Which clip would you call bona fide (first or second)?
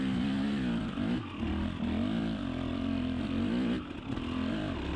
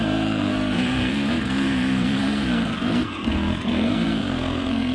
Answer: first